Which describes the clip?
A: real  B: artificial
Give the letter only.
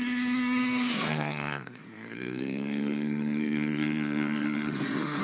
B